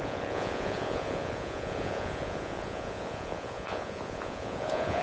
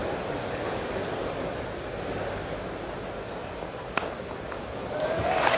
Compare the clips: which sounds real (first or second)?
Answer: second